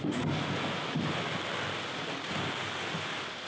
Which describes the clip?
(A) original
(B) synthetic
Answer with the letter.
A